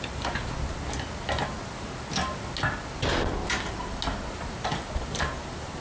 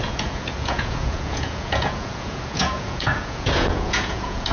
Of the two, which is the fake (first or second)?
second